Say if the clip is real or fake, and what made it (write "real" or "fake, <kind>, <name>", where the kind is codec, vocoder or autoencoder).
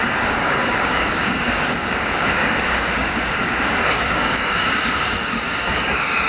fake, codec, DAC